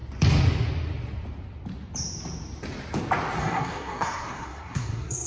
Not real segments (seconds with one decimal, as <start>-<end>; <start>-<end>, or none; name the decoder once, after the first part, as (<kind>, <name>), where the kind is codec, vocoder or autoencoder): 3.4-5.3 (codec, SNAC)

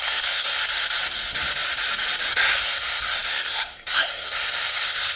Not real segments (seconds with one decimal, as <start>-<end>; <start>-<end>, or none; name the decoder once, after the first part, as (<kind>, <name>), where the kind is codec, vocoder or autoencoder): 0.0-0.6 (codec, SNAC); 2.3-5.2

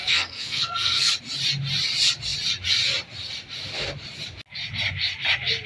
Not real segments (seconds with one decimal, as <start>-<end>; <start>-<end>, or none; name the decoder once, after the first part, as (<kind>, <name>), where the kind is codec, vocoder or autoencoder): 0.0-1.1 (codec, SNAC)

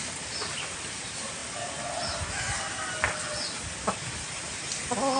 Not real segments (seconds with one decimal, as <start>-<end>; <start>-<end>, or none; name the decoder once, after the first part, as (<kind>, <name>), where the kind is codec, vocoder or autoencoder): none

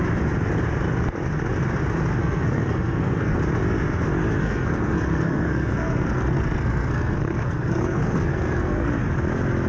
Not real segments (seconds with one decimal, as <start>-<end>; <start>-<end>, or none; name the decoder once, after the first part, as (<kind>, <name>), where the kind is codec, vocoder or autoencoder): 2.2-3.4 (codec, SNAC); 4.4-8.9